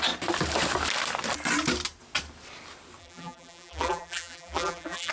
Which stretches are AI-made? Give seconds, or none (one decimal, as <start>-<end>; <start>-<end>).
3.0-5.1